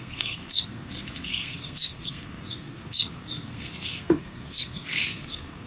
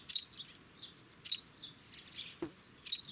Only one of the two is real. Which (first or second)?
second